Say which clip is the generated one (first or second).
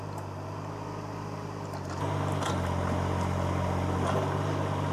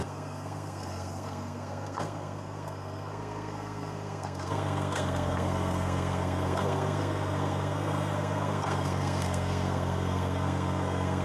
second